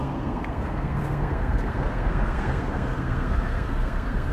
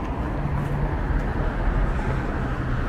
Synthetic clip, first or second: first